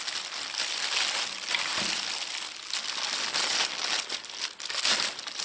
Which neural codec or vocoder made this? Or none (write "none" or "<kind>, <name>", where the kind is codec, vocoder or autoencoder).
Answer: none